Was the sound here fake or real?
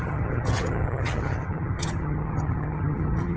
fake